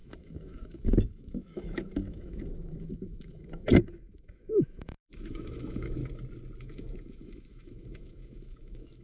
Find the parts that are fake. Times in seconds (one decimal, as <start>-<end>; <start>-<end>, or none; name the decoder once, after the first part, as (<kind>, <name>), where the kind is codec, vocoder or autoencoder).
0.0-6.0 (autoencoder, DAC-VAE); 6.6-9.0